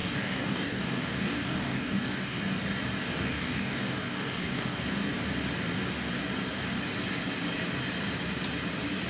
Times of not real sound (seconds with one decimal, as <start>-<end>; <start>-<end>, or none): 0.0-2.4; 3.1-4.8